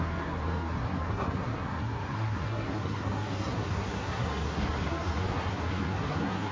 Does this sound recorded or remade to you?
remade